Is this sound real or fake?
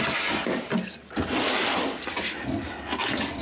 real